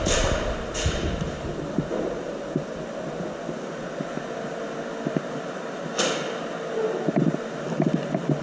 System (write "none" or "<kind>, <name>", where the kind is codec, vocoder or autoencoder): none